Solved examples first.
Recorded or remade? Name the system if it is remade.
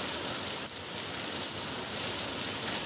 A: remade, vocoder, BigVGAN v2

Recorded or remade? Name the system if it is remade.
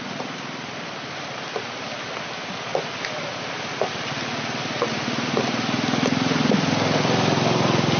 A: recorded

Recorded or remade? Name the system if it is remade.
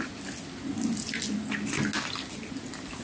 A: recorded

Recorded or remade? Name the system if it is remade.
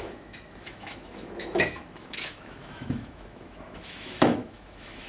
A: remade, autoencoder, DAC-VAE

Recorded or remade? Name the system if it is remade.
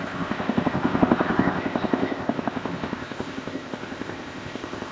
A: remade, codec, ZipCodec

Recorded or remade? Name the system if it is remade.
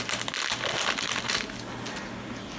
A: recorded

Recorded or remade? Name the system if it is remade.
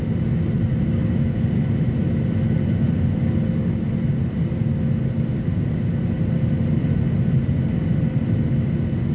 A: recorded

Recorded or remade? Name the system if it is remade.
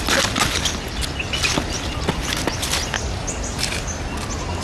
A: recorded